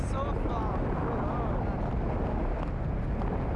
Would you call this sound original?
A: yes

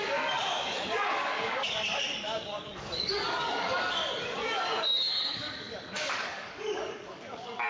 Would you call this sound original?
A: no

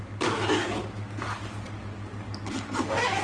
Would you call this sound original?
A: no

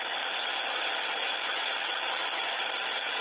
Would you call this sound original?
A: yes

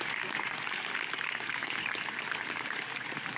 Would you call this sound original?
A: no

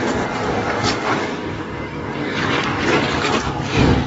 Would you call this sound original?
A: no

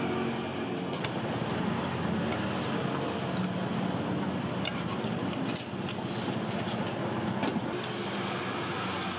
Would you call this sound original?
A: yes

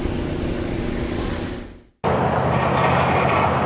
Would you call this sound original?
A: yes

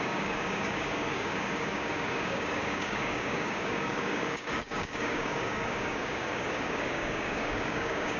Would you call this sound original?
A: no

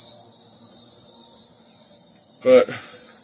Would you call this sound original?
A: yes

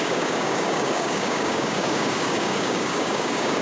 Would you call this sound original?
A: no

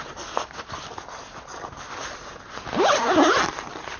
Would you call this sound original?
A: yes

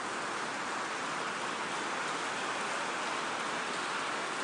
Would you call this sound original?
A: yes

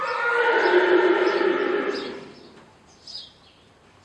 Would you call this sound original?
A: yes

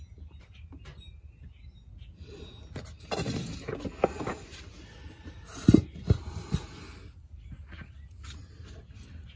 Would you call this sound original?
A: yes